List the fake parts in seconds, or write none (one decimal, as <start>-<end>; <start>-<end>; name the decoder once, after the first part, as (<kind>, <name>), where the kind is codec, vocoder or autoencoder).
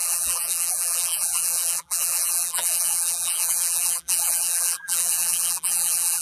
0.0-6.2 (vocoder, BigVGAN v2)